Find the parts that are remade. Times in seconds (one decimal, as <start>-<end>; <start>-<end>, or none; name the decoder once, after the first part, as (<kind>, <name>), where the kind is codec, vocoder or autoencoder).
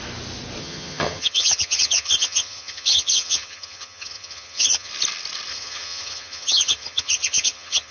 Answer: 0.6-4.9 (vocoder, HiFi-GAN); 5.5-7.9